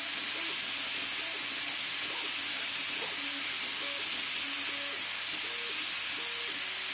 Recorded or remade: recorded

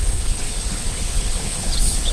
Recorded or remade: remade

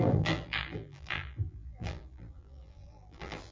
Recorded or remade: remade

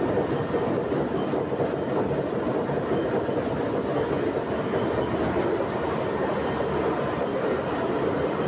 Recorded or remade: recorded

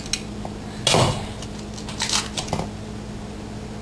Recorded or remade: recorded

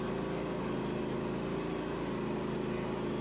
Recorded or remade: recorded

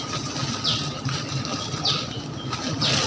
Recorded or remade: recorded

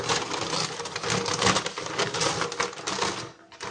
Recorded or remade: recorded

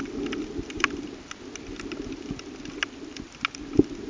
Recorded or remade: recorded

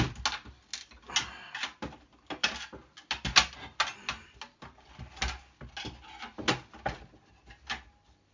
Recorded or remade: recorded